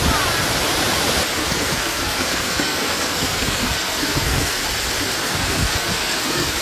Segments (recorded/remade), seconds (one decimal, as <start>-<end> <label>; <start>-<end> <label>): 0.0-1.4 recorded; 1.4-4.6 remade; 4.6-5.2 recorded; 5.2-6.6 remade